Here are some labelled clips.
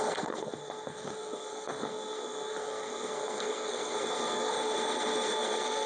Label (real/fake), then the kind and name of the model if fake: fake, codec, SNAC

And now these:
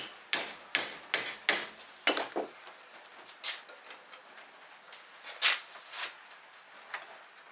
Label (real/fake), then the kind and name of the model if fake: real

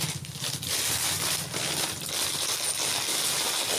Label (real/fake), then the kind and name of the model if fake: real